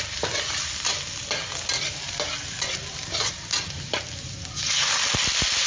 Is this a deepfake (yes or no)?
no